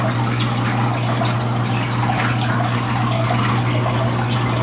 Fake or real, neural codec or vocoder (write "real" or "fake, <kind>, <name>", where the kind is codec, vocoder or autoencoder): real